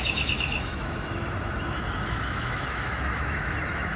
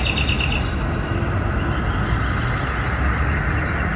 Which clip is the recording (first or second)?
second